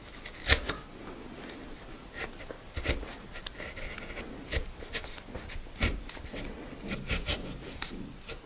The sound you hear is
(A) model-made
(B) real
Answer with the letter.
B